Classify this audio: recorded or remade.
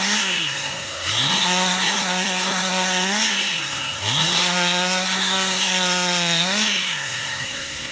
remade